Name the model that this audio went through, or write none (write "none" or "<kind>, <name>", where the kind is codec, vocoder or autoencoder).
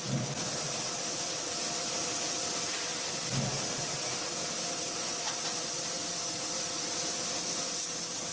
none